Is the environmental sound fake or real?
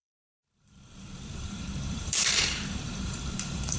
fake